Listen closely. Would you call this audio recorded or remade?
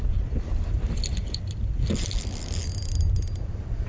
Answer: recorded